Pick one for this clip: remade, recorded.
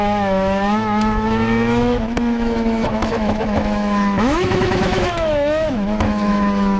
remade